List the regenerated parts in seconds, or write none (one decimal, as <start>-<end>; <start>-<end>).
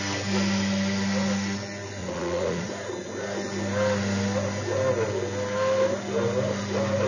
2.0-2.7